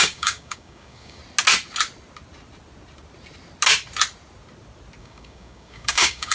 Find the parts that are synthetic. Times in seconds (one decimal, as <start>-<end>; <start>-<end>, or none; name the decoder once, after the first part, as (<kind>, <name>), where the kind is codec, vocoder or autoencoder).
0.0-1.2 (codec, DAC); 5.0-6.3